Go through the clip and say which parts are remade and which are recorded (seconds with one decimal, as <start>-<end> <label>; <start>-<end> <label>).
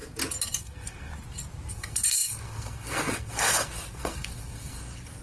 0.0-0.6 recorded; 0.6-1.1 remade; 1.1-1.7 recorded; 1.7-5.2 remade